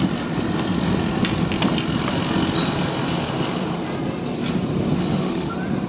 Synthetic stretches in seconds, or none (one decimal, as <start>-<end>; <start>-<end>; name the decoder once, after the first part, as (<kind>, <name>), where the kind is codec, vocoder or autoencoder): 5.0-5.5 (autoencoder, DAC-VAE)